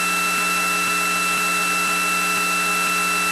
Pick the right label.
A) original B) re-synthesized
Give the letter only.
A